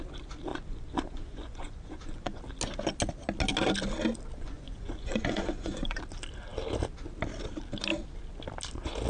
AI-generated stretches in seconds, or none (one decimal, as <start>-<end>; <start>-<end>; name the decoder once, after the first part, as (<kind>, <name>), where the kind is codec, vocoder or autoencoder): 0.5-2.4 (vocoder, Vocos); 4.4-6.0

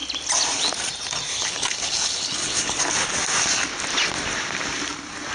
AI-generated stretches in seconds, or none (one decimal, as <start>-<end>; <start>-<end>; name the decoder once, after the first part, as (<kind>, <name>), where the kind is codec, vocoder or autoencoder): 1.3-2.8 (codec, HILCodec)

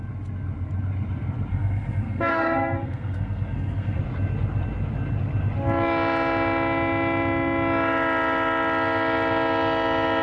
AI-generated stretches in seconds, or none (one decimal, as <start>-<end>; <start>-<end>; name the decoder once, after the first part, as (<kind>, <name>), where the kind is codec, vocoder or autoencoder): 1.5-4.0 (codec, SNAC)

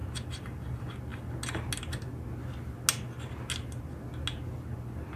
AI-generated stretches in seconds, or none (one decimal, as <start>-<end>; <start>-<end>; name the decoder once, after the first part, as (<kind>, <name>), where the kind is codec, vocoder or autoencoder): none

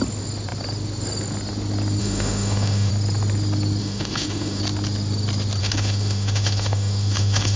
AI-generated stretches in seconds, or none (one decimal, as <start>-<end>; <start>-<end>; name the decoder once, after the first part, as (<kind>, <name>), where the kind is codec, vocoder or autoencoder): 2.0-2.9 (autoencoder, DAC-VAE); 3.8-4.6; 5.6-7.6

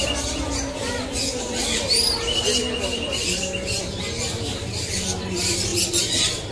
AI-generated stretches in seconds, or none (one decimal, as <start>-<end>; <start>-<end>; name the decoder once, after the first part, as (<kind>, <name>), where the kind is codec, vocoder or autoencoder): none

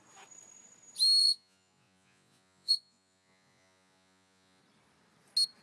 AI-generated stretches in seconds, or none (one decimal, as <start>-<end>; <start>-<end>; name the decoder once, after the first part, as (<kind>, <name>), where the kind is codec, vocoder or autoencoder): 1.2-4.6 (vocoder, Vocos)